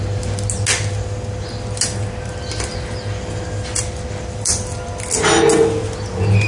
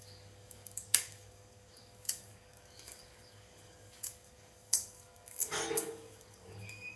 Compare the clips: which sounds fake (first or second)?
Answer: second